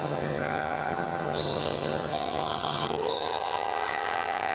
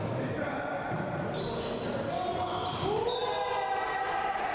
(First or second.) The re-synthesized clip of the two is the first